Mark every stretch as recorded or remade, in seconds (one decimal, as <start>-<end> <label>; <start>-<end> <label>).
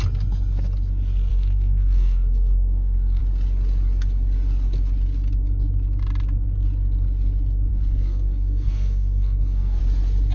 0.0-1.3 recorded; 1.3-3.2 remade; 3.2-7.7 recorded; 7.7-9.8 remade; 9.8-10.3 recorded